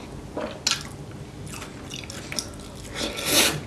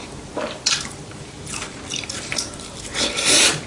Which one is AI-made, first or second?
second